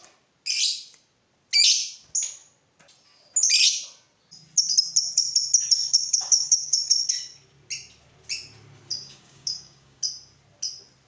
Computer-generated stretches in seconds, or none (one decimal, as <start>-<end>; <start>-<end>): 5.8-7.1; 8.9-10.0